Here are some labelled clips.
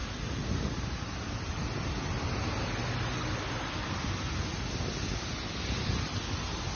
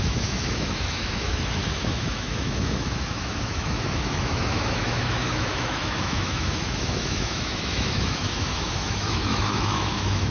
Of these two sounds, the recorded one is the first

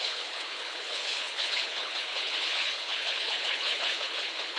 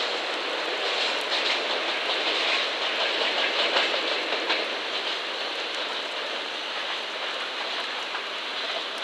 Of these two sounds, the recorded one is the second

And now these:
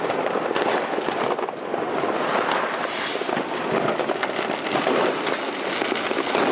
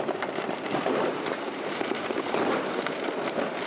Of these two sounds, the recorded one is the first